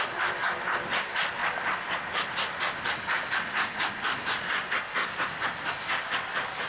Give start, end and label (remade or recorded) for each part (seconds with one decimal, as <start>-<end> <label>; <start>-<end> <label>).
0.0-6.7 recorded